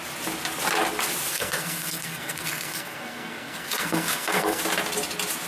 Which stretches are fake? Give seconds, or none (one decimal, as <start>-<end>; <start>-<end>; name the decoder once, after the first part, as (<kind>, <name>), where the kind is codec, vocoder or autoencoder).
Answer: 1.3-4.6 (codec, SNAC)